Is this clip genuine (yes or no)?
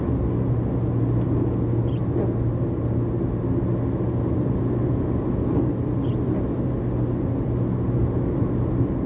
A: yes